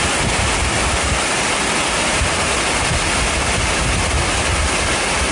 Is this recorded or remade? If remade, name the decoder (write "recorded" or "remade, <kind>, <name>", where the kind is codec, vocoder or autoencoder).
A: recorded